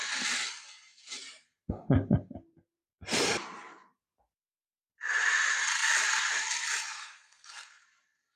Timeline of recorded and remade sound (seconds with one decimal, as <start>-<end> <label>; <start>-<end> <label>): 0.0-6.9 recorded; 6.9-7.8 remade; 7.8-8.4 recorded